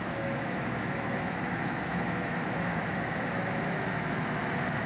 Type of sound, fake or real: fake